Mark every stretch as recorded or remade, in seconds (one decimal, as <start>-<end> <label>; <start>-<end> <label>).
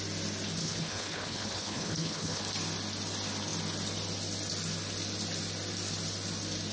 0.0-0.6 recorded; 0.6-2.4 remade; 2.4-6.7 recorded